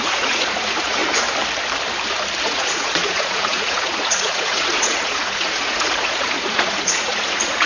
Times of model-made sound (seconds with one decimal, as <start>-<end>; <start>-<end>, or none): 0.0-1.0; 2.4-7.7

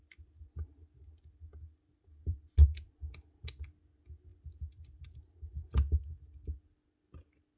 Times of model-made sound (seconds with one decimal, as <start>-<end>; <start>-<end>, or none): 1.5-2.9

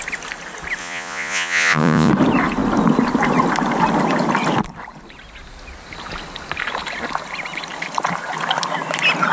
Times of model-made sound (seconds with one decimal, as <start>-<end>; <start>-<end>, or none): 0.8-2.1

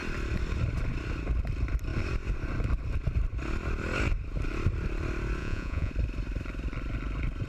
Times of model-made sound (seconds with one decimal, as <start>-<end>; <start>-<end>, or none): 5.4-5.9

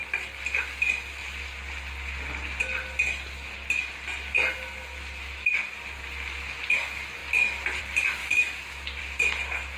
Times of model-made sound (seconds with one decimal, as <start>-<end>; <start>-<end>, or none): 8.2-9.0